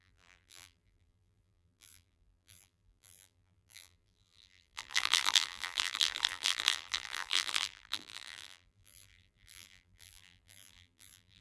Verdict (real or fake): fake